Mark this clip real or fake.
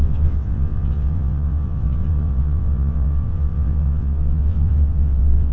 fake